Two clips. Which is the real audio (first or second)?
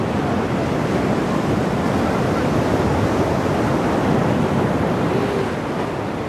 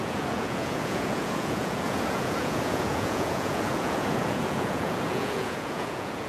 first